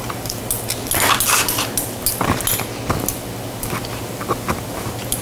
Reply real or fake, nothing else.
real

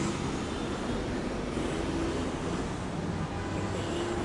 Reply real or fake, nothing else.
real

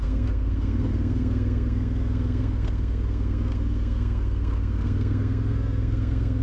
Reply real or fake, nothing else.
fake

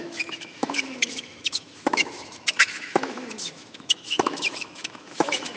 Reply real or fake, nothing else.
fake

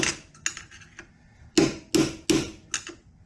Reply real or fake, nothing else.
real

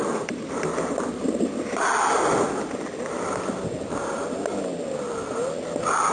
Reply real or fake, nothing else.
real